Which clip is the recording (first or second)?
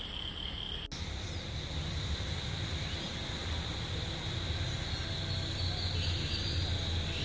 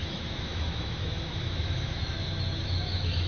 first